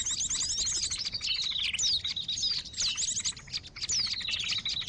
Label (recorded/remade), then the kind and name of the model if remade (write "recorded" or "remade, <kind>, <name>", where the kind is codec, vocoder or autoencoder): recorded